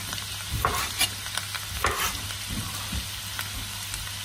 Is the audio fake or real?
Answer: real